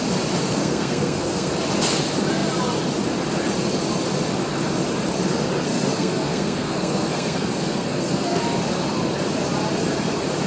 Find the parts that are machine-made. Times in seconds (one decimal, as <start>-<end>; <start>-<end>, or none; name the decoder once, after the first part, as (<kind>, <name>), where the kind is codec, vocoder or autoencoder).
0.4-1.5 (codec, SNAC); 5.7-8.4